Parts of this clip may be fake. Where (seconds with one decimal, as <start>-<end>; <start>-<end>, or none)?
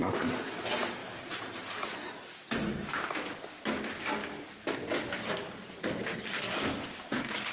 none